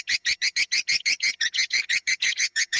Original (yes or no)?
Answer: no